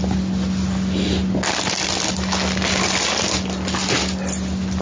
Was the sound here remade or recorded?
recorded